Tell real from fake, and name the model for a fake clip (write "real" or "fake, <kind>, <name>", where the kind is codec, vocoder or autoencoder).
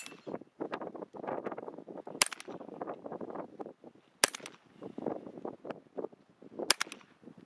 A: real